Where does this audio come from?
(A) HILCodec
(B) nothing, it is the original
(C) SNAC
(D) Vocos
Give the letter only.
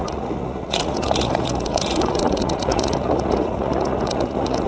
D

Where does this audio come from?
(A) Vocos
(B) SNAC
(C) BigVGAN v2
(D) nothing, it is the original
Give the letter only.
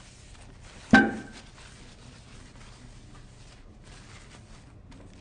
D